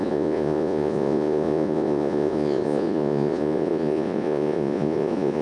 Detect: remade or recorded remade